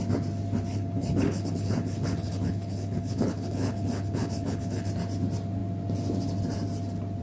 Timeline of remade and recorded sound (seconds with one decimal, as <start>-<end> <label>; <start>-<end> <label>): 0.0-0.7 recorded; 0.7-4.9 remade; 4.9-7.2 recorded